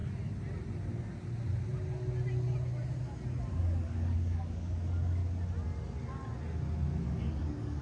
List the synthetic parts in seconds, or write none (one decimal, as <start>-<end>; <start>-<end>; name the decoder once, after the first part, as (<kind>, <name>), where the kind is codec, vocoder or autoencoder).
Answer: 3.5-5.2 (codec, DAC); 7.0-7.8